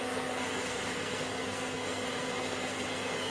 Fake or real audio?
fake